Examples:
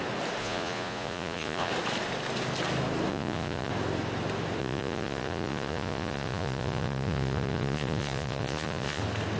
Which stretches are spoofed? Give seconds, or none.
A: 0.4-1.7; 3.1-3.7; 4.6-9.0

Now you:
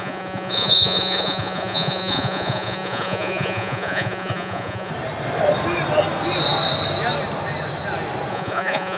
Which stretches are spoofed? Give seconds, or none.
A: 0.0-4.9; 8.3-9.0

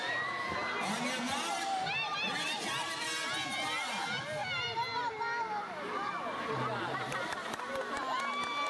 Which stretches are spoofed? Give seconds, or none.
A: none

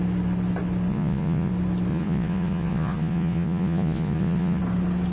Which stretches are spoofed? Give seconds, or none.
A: 0.9-1.5; 1.9-4.6

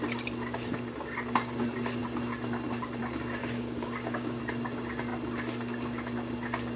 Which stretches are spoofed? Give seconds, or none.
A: 3.4-4.4

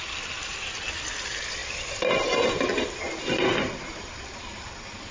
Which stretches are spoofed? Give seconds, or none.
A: none

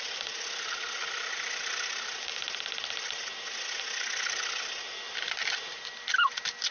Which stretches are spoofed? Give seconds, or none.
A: none

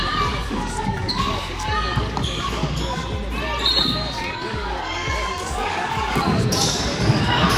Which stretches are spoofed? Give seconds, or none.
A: 0.0-3.0; 3.8-7.6